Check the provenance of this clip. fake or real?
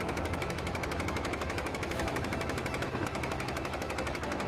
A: fake